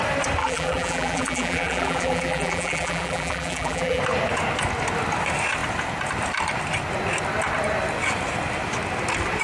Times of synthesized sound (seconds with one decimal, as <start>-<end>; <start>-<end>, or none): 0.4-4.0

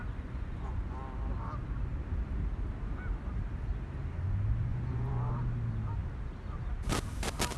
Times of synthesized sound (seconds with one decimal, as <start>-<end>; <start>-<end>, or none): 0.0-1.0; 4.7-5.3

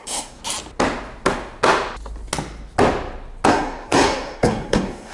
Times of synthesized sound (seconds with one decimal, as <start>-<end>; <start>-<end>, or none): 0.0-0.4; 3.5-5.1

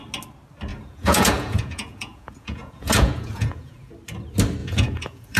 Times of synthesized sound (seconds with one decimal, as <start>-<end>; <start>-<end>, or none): 0.7-3.9; 4.6-5.4